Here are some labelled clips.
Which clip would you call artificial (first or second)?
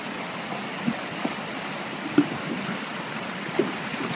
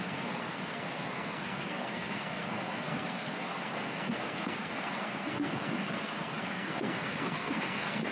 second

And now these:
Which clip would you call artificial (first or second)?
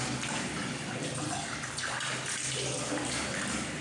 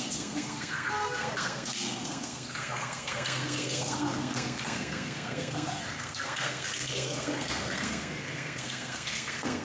second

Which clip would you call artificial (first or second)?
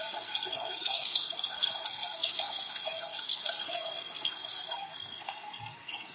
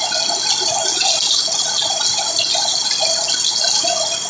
first